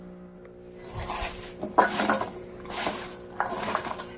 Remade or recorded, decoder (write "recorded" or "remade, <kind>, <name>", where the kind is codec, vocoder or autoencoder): recorded